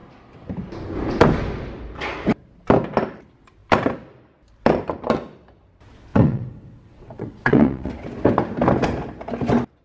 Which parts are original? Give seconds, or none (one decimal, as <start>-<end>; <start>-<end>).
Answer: 0.0-6.1; 7.9-9.8